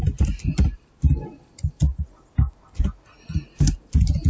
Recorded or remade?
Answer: recorded